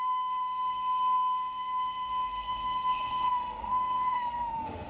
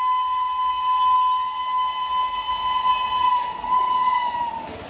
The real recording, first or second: second